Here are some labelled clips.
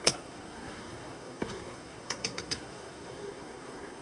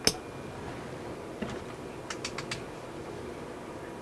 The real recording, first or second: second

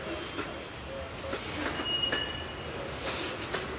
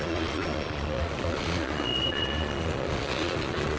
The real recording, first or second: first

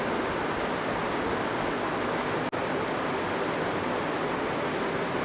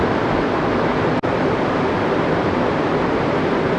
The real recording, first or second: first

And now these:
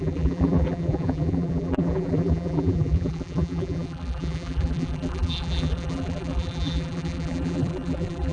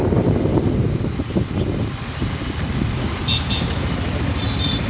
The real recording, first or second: second